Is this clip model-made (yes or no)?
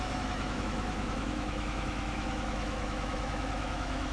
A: yes